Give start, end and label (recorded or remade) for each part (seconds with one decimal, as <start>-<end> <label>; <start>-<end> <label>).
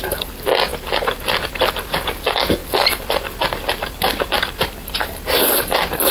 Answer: 0.0-2.6 recorded; 2.6-5.0 remade; 5.0-6.1 recorded